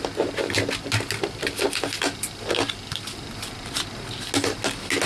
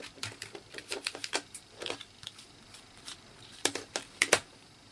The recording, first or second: first